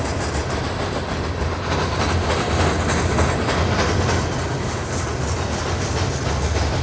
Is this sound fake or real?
real